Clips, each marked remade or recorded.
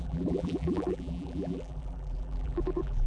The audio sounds remade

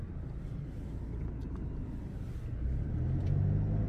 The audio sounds recorded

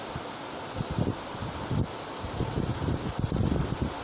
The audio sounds recorded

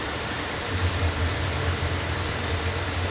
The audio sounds recorded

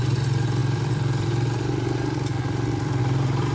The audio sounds remade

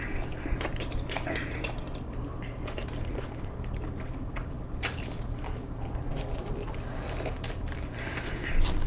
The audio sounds remade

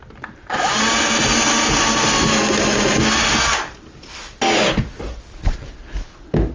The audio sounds recorded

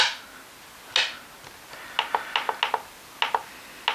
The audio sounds recorded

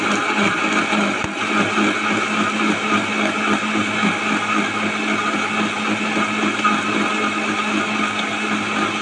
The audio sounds recorded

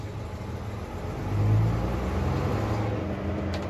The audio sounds recorded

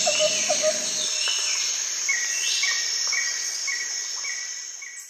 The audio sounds remade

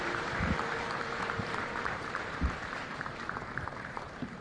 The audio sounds remade